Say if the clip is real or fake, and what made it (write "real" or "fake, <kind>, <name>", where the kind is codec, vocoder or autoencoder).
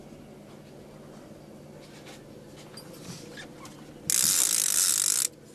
real